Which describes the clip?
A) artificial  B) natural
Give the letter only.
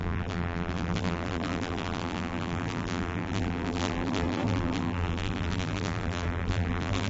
A